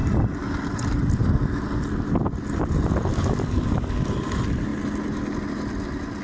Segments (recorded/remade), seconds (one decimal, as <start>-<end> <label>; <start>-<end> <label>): 0.0-3.1 recorded; 3.1-4.1 remade; 4.1-6.2 recorded